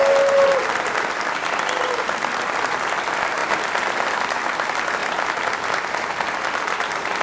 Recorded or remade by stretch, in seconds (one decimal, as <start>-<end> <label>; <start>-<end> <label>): 0.0-7.2 recorded